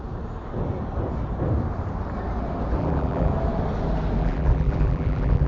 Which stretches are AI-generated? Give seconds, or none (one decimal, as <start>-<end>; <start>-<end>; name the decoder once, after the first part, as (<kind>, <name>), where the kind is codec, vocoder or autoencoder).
2.8-3.3 (vocoder, BigVGAN v2); 4.2-5.5